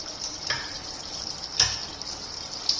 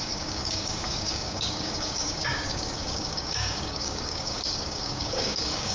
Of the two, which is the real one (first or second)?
first